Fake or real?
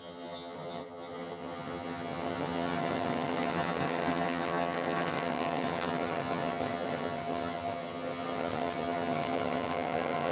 fake